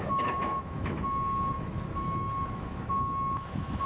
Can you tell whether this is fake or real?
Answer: fake